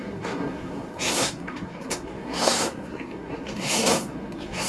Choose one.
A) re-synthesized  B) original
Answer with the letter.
A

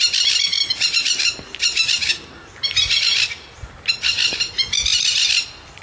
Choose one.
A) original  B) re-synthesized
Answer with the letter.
A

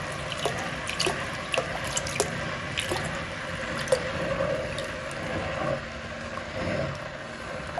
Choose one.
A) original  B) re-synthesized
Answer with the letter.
A